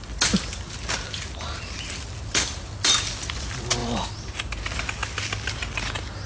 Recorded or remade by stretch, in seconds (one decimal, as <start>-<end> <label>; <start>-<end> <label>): 0.0-6.3 recorded